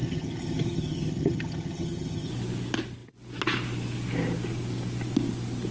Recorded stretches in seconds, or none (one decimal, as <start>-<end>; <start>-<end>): 2.3-5.7